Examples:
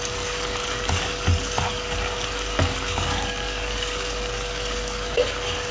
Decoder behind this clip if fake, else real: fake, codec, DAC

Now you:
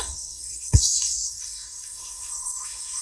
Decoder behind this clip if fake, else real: fake, codec, SNAC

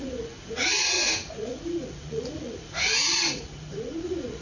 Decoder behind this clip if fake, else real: fake, vocoder, Vocos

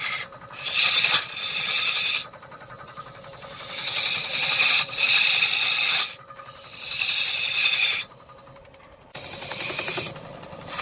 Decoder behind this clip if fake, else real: real